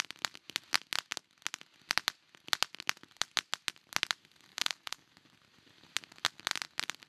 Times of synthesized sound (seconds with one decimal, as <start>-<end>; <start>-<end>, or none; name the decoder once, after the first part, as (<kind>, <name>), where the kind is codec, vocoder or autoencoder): 4.5-5.1 (codec, DAC)